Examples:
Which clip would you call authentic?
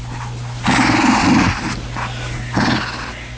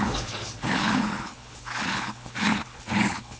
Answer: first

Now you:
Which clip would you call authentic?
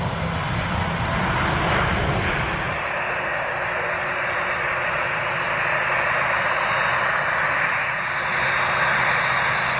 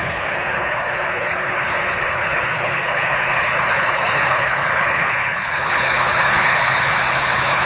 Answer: first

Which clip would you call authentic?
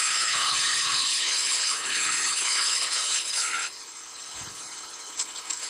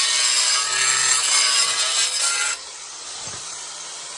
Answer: second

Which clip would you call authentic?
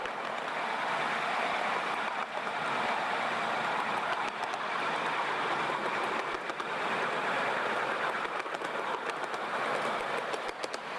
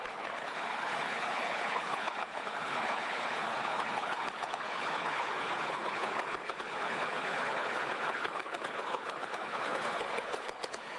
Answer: first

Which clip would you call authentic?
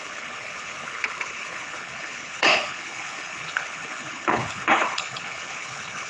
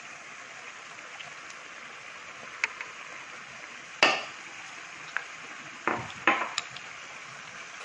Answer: second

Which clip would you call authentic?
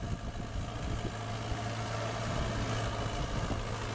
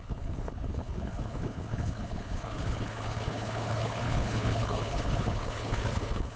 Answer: first